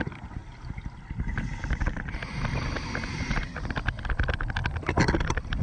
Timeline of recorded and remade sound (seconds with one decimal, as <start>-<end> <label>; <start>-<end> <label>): 0.0-5.6 recorded

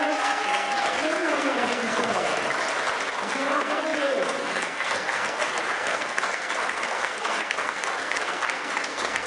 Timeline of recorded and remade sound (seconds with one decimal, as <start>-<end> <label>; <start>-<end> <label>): 0.0-2.3 remade; 2.3-3.1 recorded; 3.1-9.3 remade

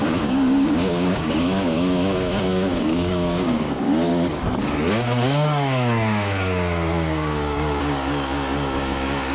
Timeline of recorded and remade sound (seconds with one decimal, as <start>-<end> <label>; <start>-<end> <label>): 0.0-4.1 remade; 4.1-4.9 recorded; 4.9-9.3 remade

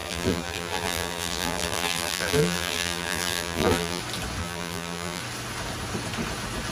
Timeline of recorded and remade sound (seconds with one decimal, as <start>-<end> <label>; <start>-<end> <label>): 0.0-4.0 remade; 4.0-4.4 recorded; 4.4-5.2 remade; 5.2-6.7 recorded

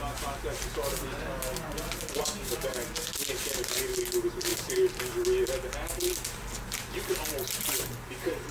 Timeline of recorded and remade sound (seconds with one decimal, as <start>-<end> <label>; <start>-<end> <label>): 0.0-4.5 recorded; 4.5-5.0 remade; 5.0-8.5 recorded

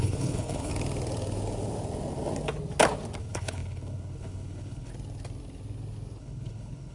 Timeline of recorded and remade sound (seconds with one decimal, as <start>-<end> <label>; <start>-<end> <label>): 0.0-0.7 remade; 0.7-3.2 recorded; 3.2-4.9 remade; 4.9-6.2 recorded; 6.2-6.9 remade

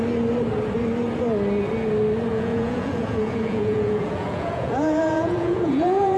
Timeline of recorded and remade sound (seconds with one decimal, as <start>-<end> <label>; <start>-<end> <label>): 0.0-2.3 recorded; 2.3-6.2 remade

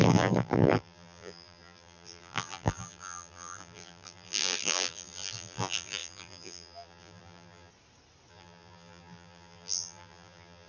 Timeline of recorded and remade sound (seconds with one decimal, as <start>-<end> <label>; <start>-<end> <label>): 0.0-7.7 remade; 7.7-8.3 recorded; 8.3-10.7 remade